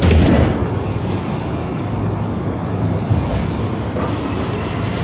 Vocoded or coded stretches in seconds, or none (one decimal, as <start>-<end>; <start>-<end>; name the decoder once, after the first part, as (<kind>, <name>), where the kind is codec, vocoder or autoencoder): 0.6-3.6 (codec, DAC)